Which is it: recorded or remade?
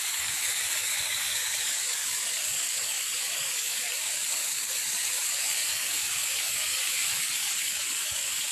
remade